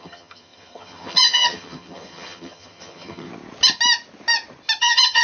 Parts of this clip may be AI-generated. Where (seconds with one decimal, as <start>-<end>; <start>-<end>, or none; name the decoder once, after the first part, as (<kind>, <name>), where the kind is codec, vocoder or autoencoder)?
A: 0.0-3.3 (vocoder, HiFi-GAN); 4.8-5.2